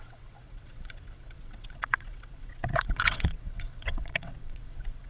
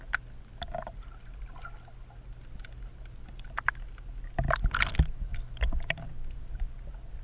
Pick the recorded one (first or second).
second